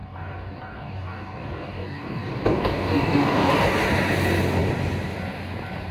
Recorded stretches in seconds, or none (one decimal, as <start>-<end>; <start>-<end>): 3.5-5.9